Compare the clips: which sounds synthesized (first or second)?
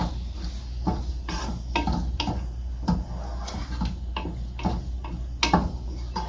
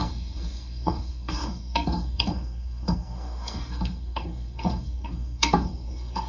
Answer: second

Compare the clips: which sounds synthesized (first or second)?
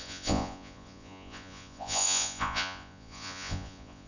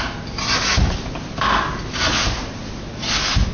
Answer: first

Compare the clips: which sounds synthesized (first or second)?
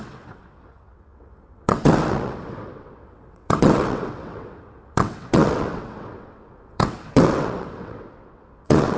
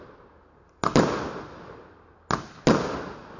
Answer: first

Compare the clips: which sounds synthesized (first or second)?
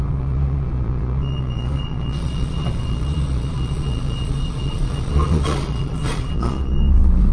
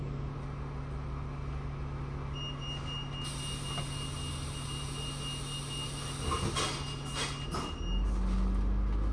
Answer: first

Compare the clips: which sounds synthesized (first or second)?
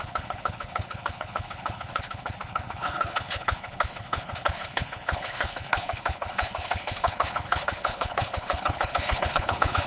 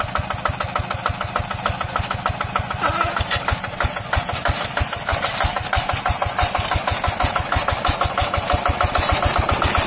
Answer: first